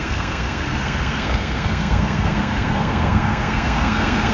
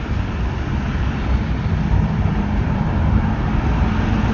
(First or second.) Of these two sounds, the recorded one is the second